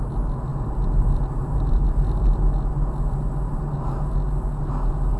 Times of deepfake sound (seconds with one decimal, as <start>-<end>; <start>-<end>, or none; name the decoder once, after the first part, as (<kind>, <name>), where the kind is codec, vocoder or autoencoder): none